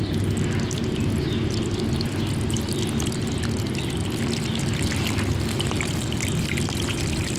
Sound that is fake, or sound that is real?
real